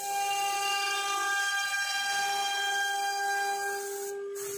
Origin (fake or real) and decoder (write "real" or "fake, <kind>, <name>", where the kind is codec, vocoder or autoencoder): real